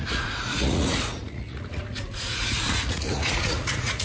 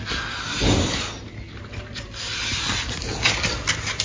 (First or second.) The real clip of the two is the second